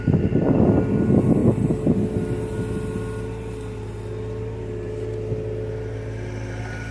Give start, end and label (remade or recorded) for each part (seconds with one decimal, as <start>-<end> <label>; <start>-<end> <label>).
0.0-6.9 recorded